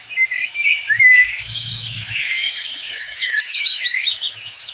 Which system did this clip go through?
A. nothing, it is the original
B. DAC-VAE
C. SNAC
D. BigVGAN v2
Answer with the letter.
B